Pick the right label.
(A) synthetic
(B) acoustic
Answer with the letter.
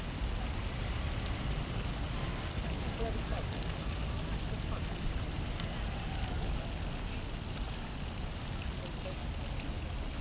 B